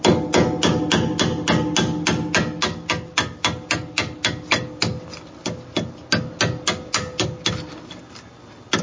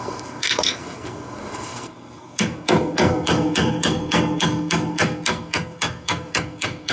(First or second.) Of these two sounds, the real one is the first